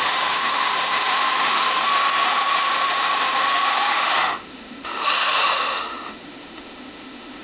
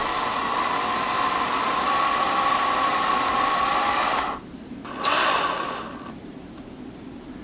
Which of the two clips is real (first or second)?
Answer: second